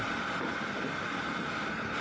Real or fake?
real